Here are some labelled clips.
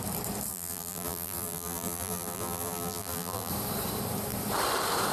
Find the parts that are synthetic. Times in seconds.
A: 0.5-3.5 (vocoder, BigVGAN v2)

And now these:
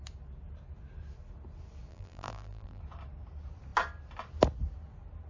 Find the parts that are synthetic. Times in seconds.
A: 1.9-2.8 (vocoder, BigVGAN v2)

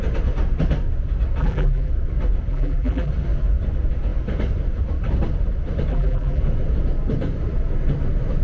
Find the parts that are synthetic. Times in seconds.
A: 1.4-1.9 (vocoder, BigVGAN v2); 2.5-3.1; 5.9-6.4

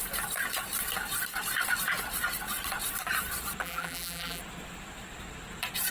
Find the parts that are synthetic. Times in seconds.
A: 3.6-4.4 (vocoder, BigVGAN v2)

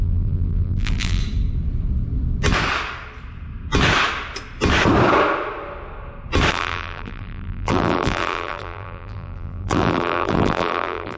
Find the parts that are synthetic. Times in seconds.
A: 0.0-1.2 (vocoder, BigVGAN v2); 6.5-11.2